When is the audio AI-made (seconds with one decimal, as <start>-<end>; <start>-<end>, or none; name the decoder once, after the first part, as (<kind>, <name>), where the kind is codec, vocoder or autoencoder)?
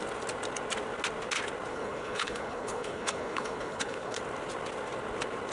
1.7-4.2 (codec, HILCodec)